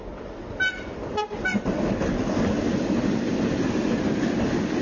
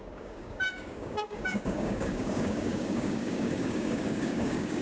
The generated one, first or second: second